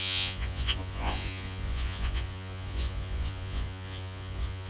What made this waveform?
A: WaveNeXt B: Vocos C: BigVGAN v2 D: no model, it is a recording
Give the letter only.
B